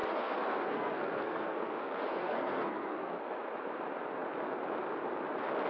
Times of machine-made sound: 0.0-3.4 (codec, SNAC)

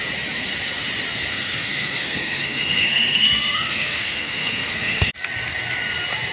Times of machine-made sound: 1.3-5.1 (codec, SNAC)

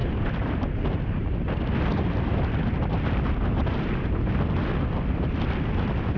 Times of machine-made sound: none